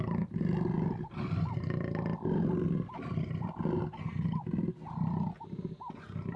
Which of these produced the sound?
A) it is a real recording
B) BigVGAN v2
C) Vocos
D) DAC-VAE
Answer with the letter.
A